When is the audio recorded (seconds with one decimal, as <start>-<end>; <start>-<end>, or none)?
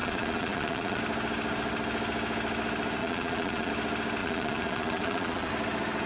1.0-3.0; 3.7-4.2; 5.5-6.1